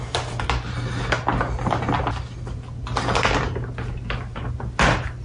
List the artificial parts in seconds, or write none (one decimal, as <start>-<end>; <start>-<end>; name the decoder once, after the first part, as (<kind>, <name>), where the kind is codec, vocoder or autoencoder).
none